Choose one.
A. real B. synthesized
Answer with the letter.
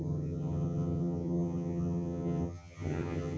B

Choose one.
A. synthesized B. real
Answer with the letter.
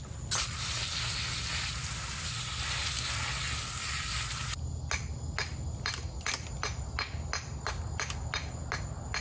B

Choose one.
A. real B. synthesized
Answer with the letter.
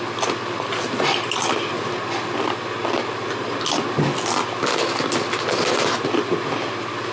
A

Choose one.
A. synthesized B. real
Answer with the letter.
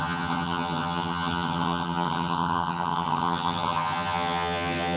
A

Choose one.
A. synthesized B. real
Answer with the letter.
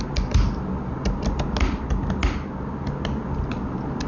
B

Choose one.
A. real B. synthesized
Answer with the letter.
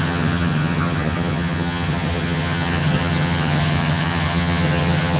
B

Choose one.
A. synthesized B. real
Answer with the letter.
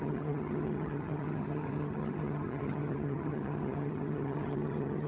A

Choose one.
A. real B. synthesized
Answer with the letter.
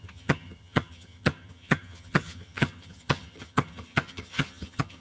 B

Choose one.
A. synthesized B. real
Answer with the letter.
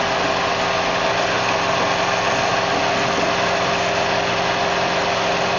B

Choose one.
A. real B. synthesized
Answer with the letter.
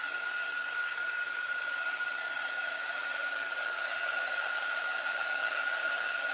B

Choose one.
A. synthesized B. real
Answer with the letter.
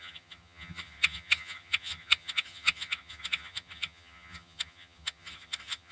A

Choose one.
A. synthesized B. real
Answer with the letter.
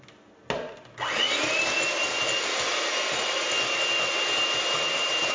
B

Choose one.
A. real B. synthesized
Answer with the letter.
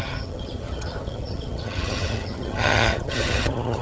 B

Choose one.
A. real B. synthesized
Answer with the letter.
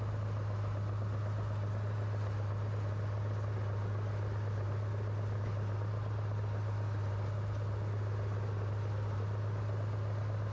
A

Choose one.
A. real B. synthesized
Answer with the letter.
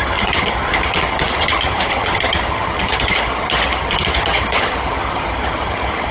B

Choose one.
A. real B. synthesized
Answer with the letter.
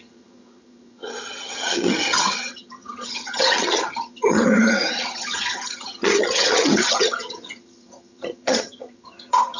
B